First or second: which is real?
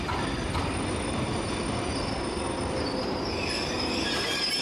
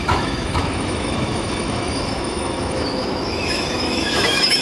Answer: first